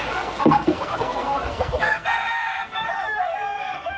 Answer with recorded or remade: remade